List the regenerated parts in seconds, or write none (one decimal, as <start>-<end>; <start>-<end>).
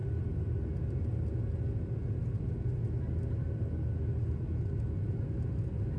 none